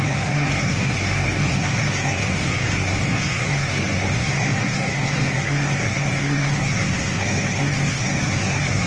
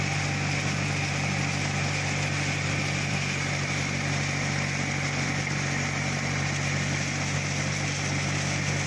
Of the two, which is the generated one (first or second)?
first